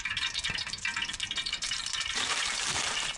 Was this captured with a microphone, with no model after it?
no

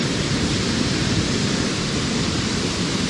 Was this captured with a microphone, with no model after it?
no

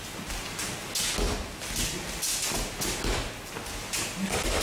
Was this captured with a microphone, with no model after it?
yes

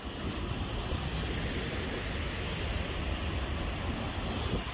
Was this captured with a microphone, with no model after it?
no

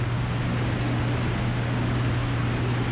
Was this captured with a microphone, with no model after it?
yes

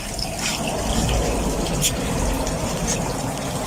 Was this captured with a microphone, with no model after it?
yes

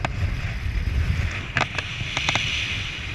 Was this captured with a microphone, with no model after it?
yes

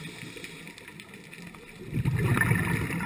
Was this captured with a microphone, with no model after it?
yes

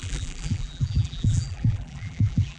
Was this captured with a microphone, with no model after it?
no